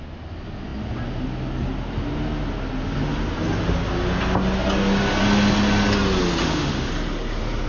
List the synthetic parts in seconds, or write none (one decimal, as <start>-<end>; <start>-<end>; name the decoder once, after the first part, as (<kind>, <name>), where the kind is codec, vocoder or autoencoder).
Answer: 6.4-6.9 (autoencoder, DAC-VAE)